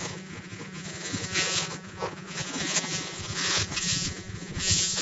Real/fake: fake